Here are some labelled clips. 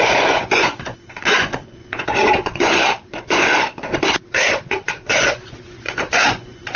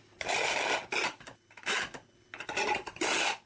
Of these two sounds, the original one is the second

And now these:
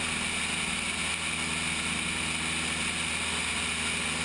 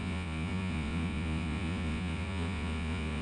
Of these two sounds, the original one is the first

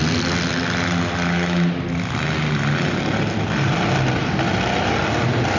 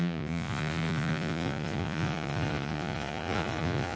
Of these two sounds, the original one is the first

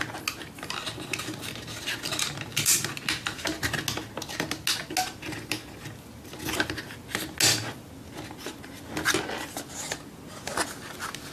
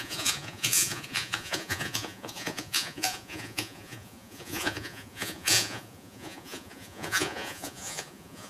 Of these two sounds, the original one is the first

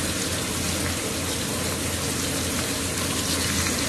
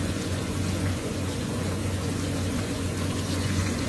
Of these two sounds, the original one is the first